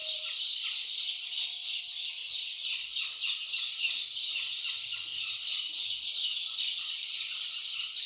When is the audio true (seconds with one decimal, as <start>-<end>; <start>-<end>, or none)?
1.2-5.1; 7.6-8.1